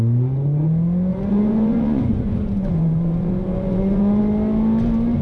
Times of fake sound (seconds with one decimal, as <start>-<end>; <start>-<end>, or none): 1.1-4.2